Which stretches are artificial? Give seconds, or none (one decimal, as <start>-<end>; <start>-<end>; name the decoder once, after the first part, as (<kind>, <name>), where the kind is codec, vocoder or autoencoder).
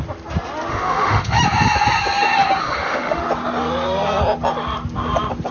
0.7-1.4 (autoencoder, DAC-VAE); 2.6-3.2